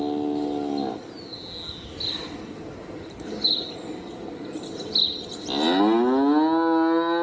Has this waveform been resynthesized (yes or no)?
no